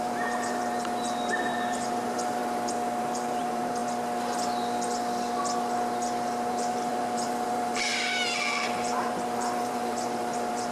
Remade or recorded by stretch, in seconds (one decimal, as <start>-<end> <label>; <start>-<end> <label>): 0.0-0.6 remade; 0.6-1.3 recorded; 1.3-2.4 remade; 2.4-3.0 recorded; 3.0-3.8 remade; 3.8-6.5 recorded; 6.5-7.9 remade; 7.9-8.6 recorded; 8.6-10.7 remade